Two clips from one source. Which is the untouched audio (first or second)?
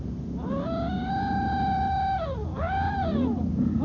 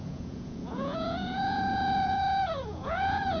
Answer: first